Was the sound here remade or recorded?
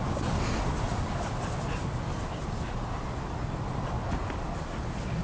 recorded